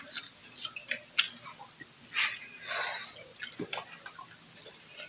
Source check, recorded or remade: recorded